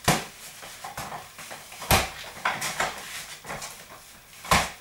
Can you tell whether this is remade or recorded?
recorded